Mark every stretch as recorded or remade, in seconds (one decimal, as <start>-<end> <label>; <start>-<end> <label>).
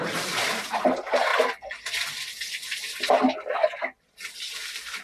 0.0-1.3 remade; 1.3-4.3 recorded; 4.3-5.0 remade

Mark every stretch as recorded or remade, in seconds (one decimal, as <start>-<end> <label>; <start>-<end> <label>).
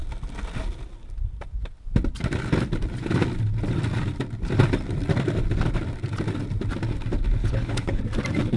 0.0-7.4 recorded; 7.4-8.0 remade; 8.0-8.6 recorded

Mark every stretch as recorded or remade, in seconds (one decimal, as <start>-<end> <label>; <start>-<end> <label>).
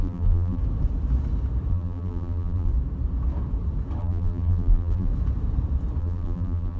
0.0-0.6 remade; 0.6-1.7 recorded; 1.7-2.7 remade; 2.7-4.0 recorded; 4.0-5.1 remade; 5.1-6.0 recorded; 6.0-6.8 remade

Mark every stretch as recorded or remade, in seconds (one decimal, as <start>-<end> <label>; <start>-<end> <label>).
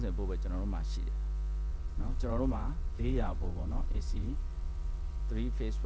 0.0-1.7 recorded; 1.7-5.2 remade; 5.2-5.9 recorded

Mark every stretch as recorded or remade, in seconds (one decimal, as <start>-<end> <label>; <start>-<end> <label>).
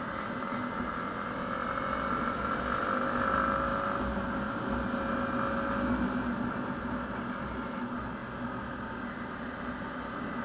0.0-10.4 recorded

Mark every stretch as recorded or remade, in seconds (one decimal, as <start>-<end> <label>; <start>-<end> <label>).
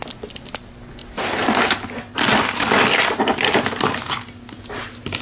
0.0-5.2 recorded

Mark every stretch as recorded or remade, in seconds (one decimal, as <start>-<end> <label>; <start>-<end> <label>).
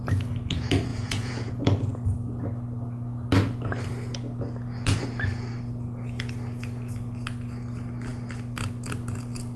0.0-0.9 recorded; 0.9-1.5 remade; 1.5-9.6 recorded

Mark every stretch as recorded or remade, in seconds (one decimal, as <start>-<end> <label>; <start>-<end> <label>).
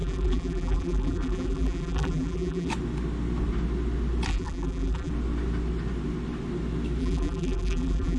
0.0-2.7 remade; 2.7-4.3 recorded; 4.3-5.1 remade; 5.1-7.0 recorded; 7.0-8.2 remade